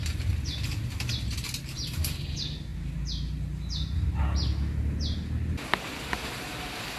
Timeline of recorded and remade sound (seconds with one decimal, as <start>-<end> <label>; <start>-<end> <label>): 0.0-7.0 recorded